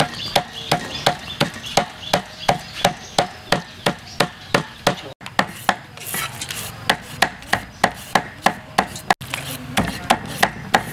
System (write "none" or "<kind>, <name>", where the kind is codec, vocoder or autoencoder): none